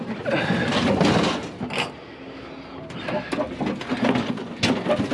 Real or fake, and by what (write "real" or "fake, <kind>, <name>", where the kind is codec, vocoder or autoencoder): real